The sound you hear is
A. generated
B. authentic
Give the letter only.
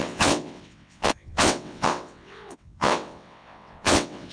A